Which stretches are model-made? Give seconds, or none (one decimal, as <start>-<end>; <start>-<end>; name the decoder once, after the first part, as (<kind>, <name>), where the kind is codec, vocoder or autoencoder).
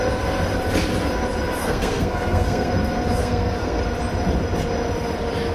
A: 1.6-2.7 (codec, SNAC); 3.2-3.8